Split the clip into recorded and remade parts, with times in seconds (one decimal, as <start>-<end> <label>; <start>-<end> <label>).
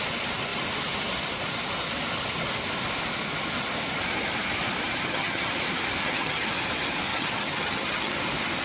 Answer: 0.0-5.0 recorded; 5.0-5.5 remade; 5.5-6.0 recorded; 6.0-6.5 remade; 6.5-7.1 recorded; 7.1-8.2 remade; 8.2-8.6 recorded